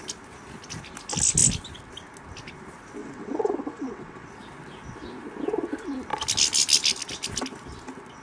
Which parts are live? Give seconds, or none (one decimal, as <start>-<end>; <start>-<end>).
0.0-3.0; 4.3-8.2